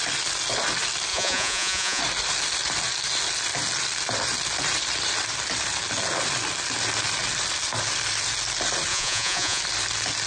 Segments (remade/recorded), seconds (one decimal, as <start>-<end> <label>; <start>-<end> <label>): 0.0-1.1 recorded; 1.1-2.0 remade; 2.0-8.9 recorded; 8.9-9.6 remade; 9.6-10.3 recorded